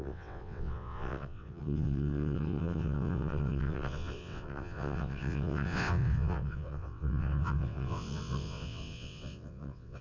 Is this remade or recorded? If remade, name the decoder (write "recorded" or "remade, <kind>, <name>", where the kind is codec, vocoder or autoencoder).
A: remade, vocoder, WaveNeXt